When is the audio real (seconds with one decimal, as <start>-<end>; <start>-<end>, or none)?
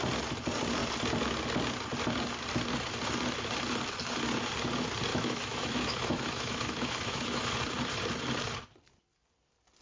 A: 0.0-5.1; 7.5-9.8